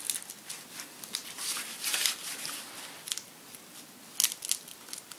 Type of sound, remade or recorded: recorded